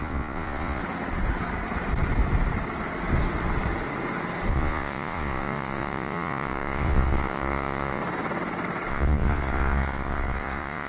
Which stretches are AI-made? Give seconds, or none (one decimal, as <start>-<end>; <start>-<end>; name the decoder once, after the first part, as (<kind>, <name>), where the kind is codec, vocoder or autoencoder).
0.0-0.8 (vocoder, Vocos); 4.5-8.0; 8.9-10.9